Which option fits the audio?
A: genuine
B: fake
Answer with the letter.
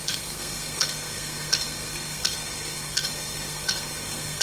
B